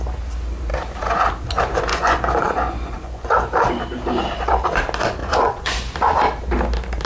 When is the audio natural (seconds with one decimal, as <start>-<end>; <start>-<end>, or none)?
0.0-1.9; 3.3-5.2; 5.8-7.1